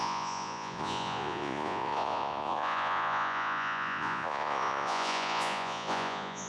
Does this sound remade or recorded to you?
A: remade